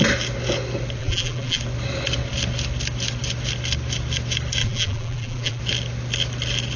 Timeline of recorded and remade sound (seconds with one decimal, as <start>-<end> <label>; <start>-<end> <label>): 0.0-1.0 recorded; 1.0-1.6 remade; 1.6-4.6 recorded; 4.6-5.6 remade; 5.6-6.8 recorded